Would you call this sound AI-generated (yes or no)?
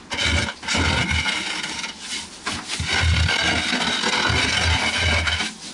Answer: no